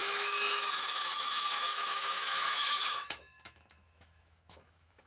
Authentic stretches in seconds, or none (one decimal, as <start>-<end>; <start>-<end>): none